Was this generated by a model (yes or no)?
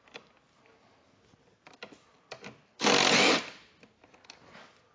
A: no